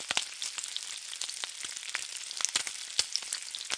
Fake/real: real